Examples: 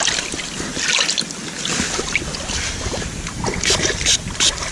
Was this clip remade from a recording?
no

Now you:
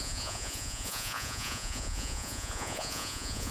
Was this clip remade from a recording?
yes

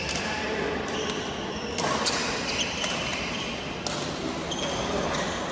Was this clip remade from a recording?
no